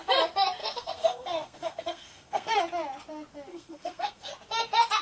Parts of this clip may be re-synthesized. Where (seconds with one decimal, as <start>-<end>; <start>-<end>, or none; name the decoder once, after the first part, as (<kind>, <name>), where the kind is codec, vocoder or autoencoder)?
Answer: 0.6-2.6 (codec, SNAC); 3.5-4.3